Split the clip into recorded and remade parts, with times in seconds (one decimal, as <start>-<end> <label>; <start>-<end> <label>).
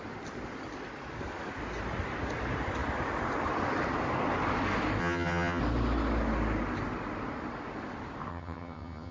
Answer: 0.0-5.0 recorded; 5.0-5.6 remade; 5.6-8.3 recorded; 8.3-9.1 remade